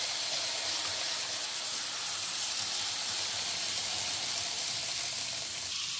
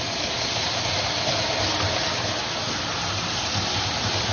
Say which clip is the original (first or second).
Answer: second